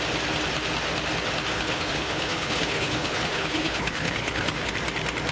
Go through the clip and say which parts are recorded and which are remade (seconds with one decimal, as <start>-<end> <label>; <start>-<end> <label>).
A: 0.0-1.5 recorded; 1.5-4.7 remade; 4.7-5.3 recorded